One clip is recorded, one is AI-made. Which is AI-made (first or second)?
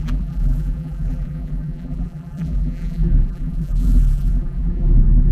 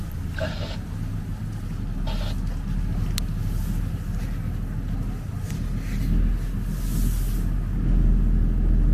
first